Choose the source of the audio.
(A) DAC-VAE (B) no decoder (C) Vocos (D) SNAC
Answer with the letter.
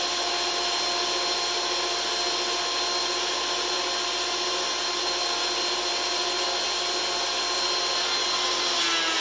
B